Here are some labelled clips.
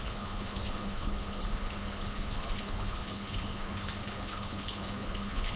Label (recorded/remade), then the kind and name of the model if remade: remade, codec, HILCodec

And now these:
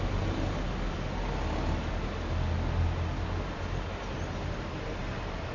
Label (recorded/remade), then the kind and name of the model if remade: recorded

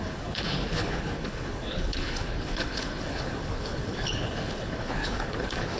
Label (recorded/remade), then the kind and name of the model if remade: remade, codec, HILCodec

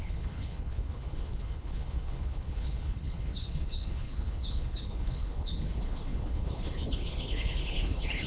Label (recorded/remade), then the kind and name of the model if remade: remade, codec, HILCodec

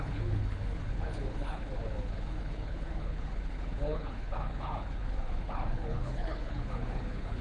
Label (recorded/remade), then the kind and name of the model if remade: remade, codec, HILCodec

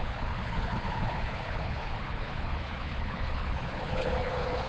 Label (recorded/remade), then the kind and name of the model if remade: remade, codec, HILCodec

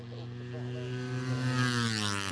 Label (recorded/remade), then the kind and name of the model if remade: recorded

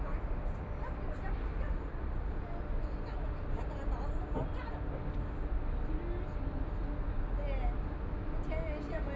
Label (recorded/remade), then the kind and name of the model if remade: recorded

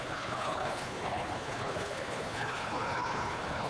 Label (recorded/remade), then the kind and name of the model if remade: remade, codec, HILCodec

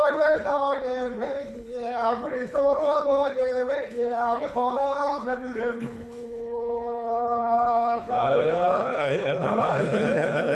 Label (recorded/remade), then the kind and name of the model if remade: remade, codec, HILCodec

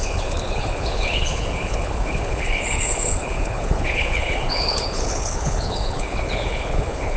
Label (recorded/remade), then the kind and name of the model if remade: remade, codec, HILCodec